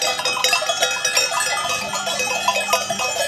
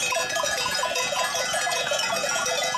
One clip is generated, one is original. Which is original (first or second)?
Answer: first